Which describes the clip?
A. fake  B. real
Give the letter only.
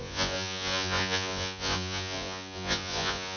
A